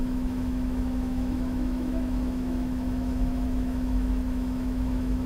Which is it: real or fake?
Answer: fake